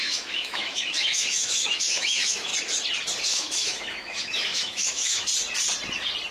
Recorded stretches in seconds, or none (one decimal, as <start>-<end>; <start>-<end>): 2.5-3.2; 5.3-6.3